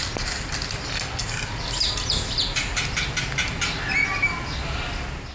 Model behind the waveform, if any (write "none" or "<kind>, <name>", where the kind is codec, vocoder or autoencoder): none